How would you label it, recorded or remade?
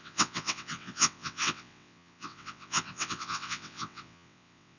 remade